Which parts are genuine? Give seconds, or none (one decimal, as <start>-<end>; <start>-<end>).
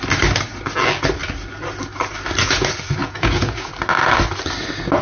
0.0-3.0; 3.7-5.0